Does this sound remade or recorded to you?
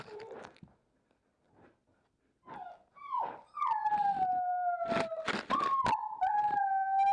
recorded